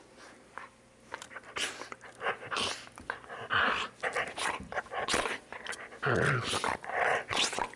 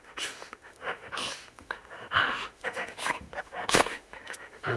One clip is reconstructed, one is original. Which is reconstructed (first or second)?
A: second